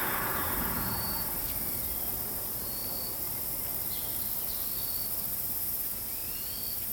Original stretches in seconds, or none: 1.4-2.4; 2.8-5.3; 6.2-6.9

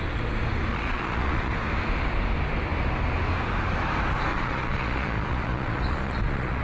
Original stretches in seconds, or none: 0.0-0.7; 1.5-4.3

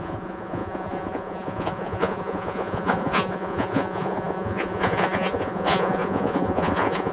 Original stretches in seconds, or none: none

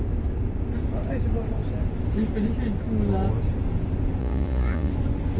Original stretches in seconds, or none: 0.0-4.2; 4.9-5.4

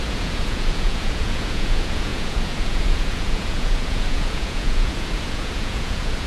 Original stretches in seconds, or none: none

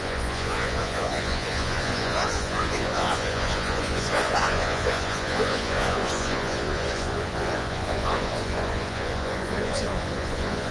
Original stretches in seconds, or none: none